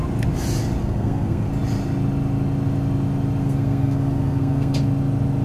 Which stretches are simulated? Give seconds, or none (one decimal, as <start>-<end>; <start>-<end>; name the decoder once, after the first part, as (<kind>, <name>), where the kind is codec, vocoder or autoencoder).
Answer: 0.8-1.5 (codec, SNAC); 3.4-4.7